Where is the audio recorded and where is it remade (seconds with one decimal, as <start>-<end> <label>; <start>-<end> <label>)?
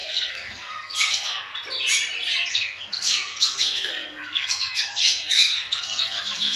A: 0.0-1.5 remade; 1.5-2.5 recorded; 2.5-6.6 remade